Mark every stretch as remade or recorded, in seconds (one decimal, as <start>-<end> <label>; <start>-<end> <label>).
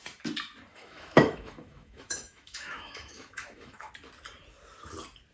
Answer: 0.0-0.7 recorded; 0.7-3.9 remade; 3.9-5.3 recorded